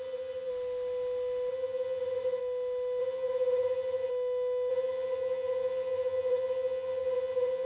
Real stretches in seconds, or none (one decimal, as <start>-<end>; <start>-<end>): 0.5-1.5; 2.4-3.0; 4.1-4.7